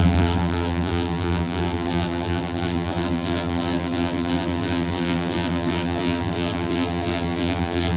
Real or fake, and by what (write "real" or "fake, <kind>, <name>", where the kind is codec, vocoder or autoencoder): fake, vocoder, BigVGAN v2